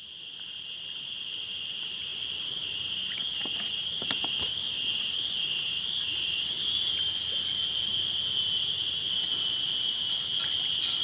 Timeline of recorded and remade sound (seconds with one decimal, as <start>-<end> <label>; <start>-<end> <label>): 0.0-11.0 recorded